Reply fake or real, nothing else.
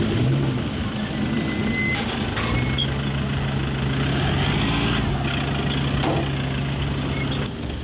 real